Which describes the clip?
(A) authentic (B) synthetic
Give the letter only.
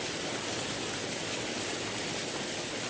A